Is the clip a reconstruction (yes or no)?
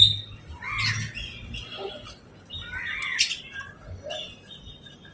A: no